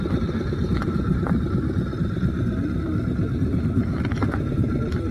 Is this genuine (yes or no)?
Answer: yes